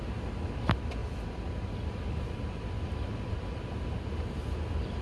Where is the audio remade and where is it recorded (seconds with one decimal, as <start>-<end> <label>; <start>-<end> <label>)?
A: 0.0-1.0 recorded; 1.0-3.4 remade; 3.4-5.0 recorded